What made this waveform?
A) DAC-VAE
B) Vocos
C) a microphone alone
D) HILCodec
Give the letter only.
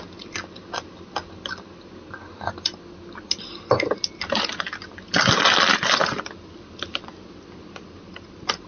C